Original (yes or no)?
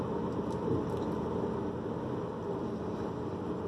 yes